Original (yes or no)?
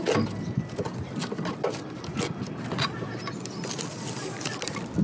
yes